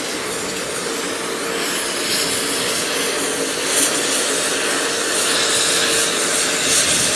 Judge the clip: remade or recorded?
recorded